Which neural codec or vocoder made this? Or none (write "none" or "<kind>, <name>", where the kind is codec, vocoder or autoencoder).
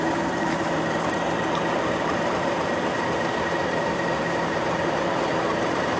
vocoder, BigVGAN v2